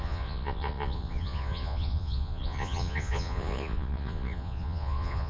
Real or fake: fake